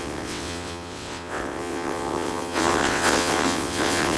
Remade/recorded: remade